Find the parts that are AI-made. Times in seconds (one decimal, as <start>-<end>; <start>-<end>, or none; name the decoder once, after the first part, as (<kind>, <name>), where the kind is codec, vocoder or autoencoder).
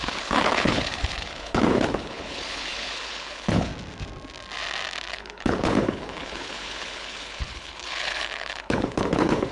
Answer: 0.0-3.7 (codec, HILCodec); 5.1-9.5